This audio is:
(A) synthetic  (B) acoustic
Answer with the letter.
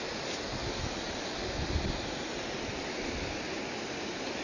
B